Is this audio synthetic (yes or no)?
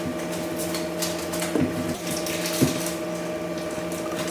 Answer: no